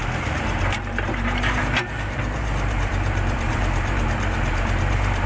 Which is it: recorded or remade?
remade